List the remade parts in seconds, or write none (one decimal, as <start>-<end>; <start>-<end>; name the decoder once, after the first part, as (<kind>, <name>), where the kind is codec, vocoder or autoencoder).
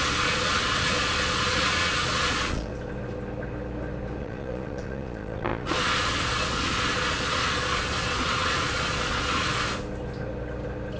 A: 0.0-2.7 (vocoder, Vocos); 4.2-9.5